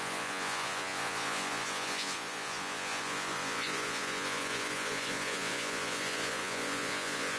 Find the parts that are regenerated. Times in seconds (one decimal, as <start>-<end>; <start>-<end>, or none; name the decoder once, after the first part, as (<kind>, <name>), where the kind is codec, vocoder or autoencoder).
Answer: 0.0-7.4 (vocoder, Vocos)